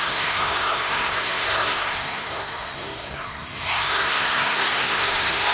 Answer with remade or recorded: remade